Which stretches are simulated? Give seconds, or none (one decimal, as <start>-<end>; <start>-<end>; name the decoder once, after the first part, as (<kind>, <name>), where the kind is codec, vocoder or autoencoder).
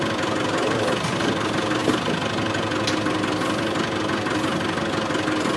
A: none